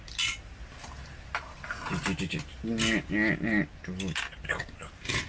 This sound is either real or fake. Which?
real